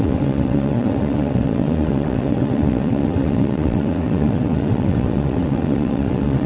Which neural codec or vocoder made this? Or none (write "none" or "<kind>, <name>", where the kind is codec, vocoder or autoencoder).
vocoder, WaveNeXt